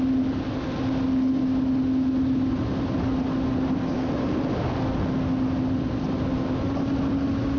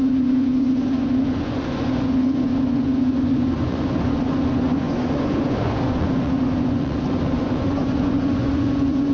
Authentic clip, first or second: first